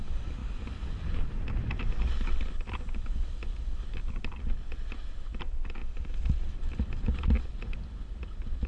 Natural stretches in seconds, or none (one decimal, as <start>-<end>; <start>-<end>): 0.0-8.7